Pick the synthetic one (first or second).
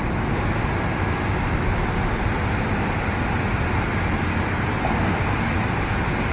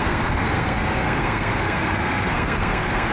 second